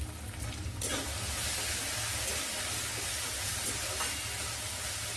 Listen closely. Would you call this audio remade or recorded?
recorded